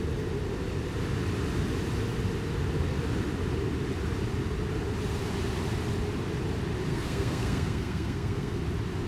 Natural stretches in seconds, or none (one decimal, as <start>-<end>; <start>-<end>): 0.0-6.9; 8.6-9.1